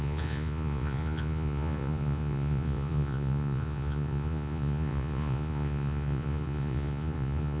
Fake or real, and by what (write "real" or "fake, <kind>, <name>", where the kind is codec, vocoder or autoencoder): fake, vocoder, Vocos